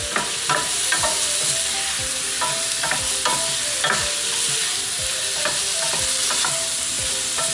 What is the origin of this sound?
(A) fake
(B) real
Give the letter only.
B